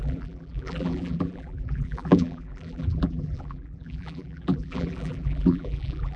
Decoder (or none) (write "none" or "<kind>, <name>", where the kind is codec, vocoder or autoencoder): vocoder, BigVGAN v2